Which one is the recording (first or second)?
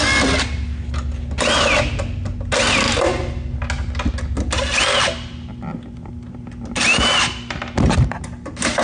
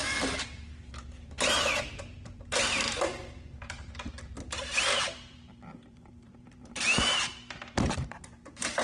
first